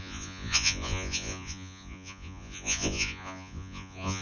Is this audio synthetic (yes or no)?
yes